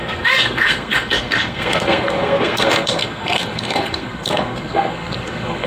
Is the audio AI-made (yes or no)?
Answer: yes